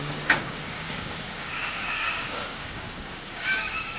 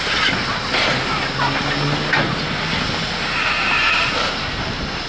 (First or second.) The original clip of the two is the second